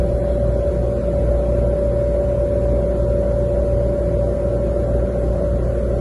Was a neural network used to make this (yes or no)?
no